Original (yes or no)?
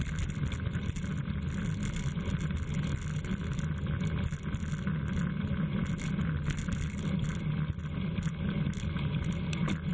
yes